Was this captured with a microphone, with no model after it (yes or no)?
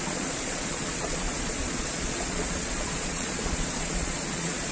no